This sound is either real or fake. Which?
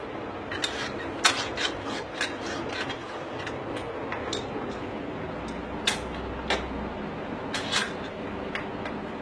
real